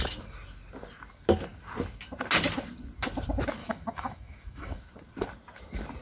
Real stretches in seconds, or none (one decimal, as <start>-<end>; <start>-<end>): 0.0-3.6; 4.8-6.0